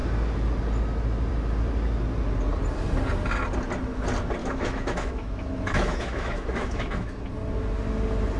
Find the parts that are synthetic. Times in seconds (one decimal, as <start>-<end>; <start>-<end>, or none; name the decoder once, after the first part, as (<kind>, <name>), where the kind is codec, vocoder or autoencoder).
4.4-7.3 (autoencoder, DAC-VAE)